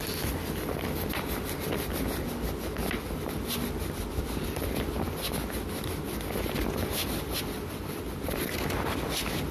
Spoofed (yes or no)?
no